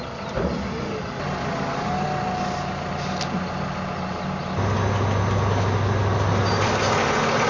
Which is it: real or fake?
real